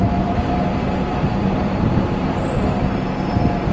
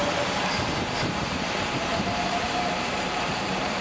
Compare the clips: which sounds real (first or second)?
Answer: first